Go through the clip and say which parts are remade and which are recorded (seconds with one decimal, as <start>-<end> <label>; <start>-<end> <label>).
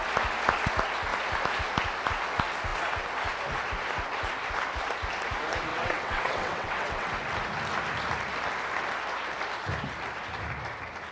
0.0-5.7 recorded; 5.7-7.1 remade; 7.1-11.1 recorded